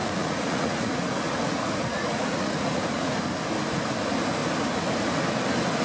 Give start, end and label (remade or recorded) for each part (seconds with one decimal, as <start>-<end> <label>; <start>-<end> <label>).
0.0-3.1 remade; 3.1-5.8 recorded